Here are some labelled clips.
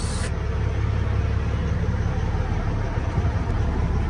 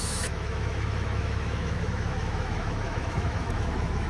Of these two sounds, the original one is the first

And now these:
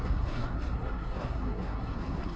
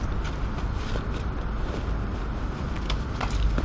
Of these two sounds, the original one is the second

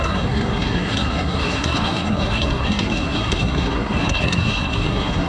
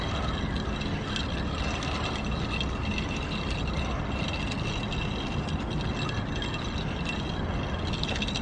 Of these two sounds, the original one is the second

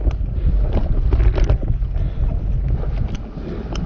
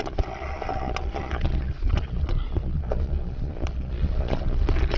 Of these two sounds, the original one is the first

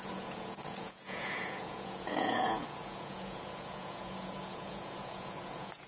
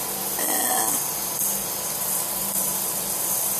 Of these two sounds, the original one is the second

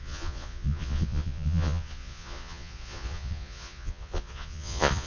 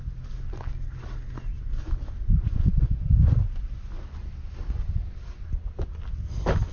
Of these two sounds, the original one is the second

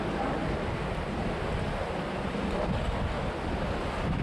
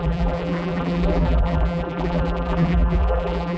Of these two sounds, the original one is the first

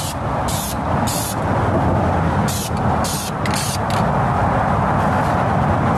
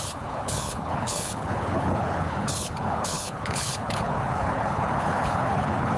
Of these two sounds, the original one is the first